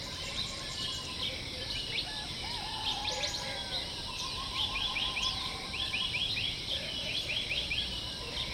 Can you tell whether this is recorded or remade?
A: remade